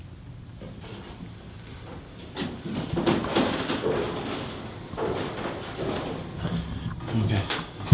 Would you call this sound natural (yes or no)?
yes